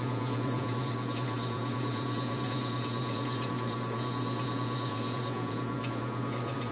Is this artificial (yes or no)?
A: yes